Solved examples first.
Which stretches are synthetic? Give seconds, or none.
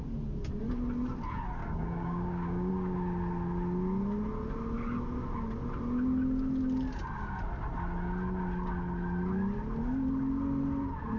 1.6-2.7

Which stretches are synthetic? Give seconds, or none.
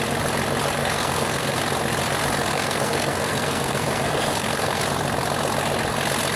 0.8-1.6; 2.5-4.8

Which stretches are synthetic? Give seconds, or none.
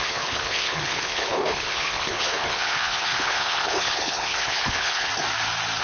0.0-5.1